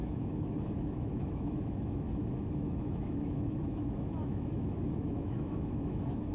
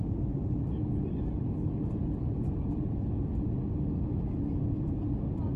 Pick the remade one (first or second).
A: first